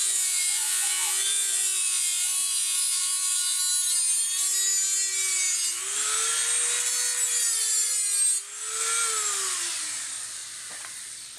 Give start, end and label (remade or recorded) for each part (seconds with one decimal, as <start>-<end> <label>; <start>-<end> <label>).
0.0-3.6 remade; 3.6-11.4 recorded